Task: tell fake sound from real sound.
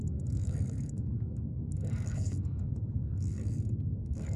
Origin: fake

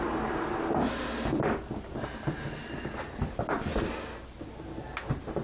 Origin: real